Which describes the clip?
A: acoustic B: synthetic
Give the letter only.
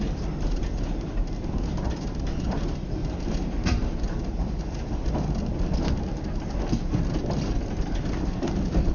A